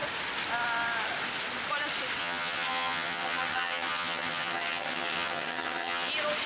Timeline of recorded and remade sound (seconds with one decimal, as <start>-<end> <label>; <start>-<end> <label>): 0.0-2.2 recorded; 2.2-6.1 remade; 6.1-6.5 recorded